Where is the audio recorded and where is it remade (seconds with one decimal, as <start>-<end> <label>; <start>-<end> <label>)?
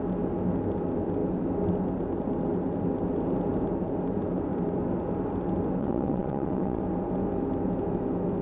0.0-5.8 recorded; 5.8-6.8 remade; 6.8-8.4 recorded